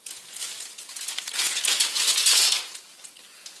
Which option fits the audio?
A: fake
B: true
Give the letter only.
A